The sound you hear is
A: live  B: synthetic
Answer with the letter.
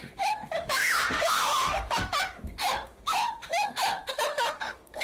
B